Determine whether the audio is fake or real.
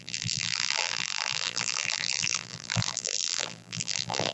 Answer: fake